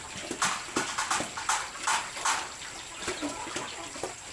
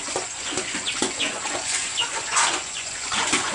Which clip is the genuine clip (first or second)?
first